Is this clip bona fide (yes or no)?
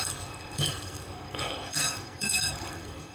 no